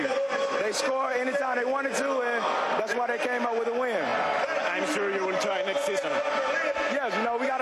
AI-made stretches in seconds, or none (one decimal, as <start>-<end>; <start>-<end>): none

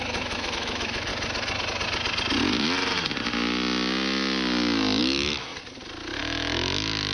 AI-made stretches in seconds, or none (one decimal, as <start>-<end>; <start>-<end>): 0.0-1.1; 5.0-5.5; 6.2-7.1

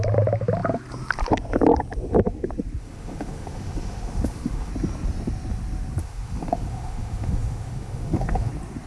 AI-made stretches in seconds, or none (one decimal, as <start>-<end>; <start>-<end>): 2.8-4.7; 6.0-8.5

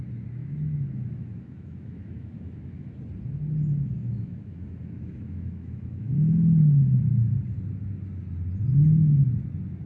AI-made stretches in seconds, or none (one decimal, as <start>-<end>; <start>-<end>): 0.4-2.9; 4.0-6.6

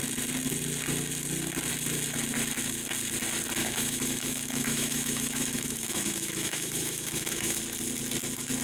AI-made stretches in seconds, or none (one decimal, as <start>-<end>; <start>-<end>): 3.6-7.6

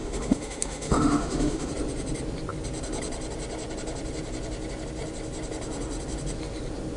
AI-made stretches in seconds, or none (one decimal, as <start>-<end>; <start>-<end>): 0.0-1.7

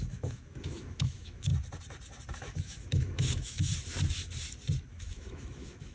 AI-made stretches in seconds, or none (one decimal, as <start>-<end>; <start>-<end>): 0.0-1.5; 2.3-3.7; 4.9-5.9

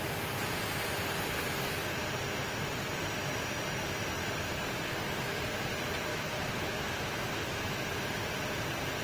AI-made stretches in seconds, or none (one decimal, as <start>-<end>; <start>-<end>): 6.1-7.9